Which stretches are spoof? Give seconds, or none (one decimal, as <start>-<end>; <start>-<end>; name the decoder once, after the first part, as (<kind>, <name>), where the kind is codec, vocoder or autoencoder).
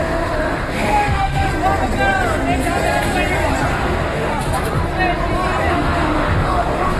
0.0-1.5 (autoencoder, DAC-VAE); 3.7-4.3; 5.7-7.0